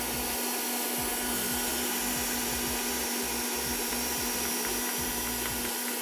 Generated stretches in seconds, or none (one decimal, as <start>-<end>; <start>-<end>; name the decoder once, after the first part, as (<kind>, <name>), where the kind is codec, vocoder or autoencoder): none